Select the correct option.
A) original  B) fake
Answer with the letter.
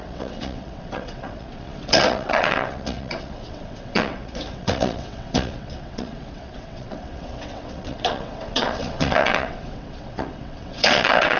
B